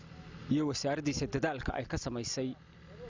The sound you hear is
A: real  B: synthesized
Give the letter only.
A